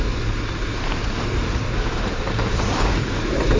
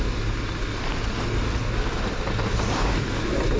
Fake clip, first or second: first